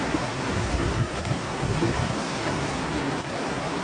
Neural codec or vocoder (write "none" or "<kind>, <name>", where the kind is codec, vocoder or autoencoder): codec, SNAC